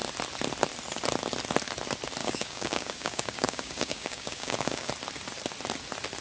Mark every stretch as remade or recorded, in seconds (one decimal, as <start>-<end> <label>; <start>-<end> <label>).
0.0-2.2 recorded; 2.2-4.9 remade; 4.9-6.2 recorded